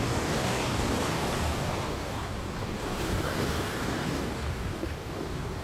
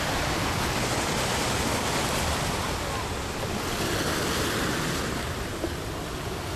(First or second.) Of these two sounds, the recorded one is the second